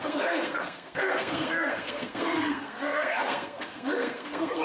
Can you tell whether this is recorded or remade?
remade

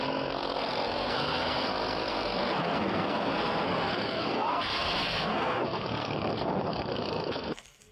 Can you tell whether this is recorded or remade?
remade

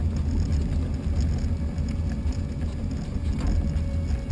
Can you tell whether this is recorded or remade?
recorded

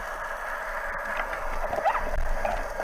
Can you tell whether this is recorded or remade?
recorded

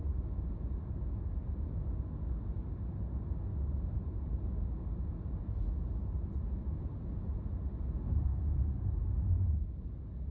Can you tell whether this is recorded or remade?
recorded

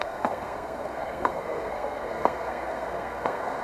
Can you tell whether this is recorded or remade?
remade